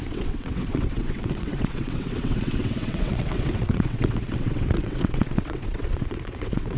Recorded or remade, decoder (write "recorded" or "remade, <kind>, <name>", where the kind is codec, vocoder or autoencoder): remade, vocoder, WaveNeXt